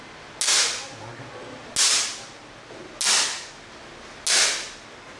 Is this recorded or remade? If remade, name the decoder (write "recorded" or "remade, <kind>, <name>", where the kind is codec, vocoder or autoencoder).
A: recorded